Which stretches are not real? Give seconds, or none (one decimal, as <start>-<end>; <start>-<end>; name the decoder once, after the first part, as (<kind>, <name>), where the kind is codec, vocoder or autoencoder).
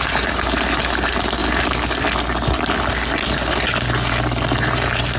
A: none